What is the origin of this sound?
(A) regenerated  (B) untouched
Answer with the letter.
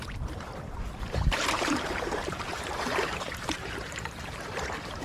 A